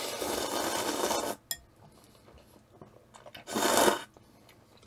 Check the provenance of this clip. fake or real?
real